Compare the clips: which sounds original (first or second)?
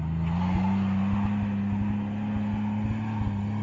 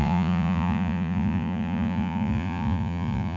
first